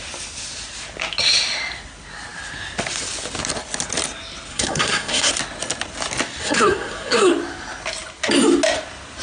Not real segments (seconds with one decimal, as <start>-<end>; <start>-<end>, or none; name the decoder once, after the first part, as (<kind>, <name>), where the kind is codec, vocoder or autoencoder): 4.5-5.3 (codec, SNAC); 6.4-7.3